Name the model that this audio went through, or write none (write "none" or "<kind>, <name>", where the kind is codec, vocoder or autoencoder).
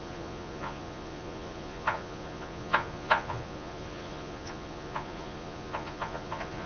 vocoder, Vocos